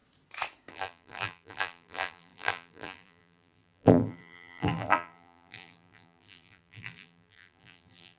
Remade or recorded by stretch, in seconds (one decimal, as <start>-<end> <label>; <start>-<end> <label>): 0.0-0.7 recorded; 0.7-8.2 remade